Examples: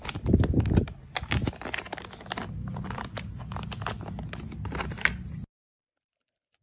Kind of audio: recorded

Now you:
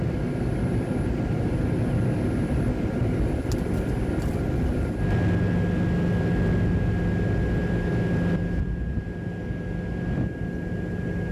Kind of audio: recorded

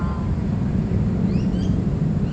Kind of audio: remade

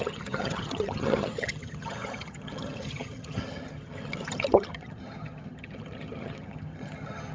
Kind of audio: remade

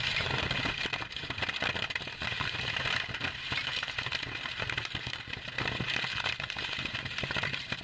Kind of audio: remade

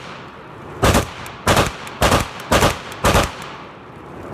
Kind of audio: recorded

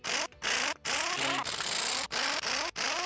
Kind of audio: recorded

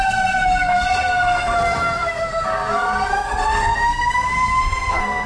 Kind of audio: remade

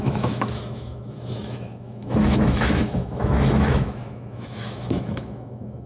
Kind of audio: remade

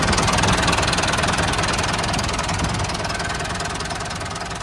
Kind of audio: recorded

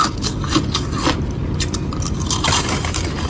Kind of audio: recorded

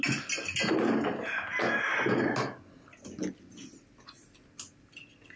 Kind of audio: recorded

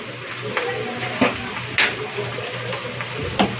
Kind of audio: recorded